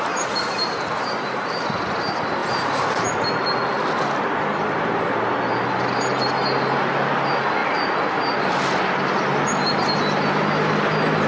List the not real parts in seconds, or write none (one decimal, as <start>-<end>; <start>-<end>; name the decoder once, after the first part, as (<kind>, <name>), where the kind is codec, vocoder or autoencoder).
0.0-2.4 (vocoder, BigVGAN v2); 5.7-11.3